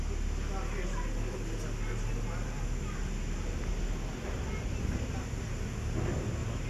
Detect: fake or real real